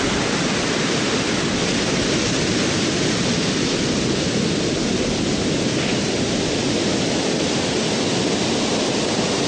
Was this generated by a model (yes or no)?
no